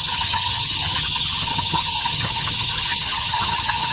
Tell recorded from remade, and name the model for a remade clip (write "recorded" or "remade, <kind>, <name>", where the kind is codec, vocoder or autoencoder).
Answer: remade, vocoder, HiFi-GAN